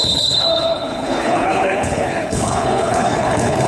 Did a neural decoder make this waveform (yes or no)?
yes